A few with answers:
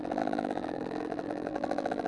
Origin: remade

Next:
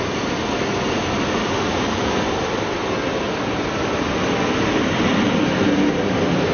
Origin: recorded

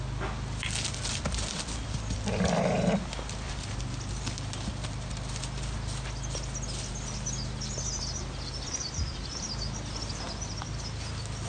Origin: recorded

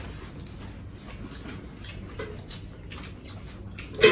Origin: recorded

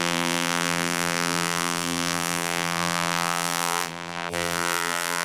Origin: remade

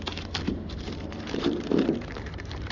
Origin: remade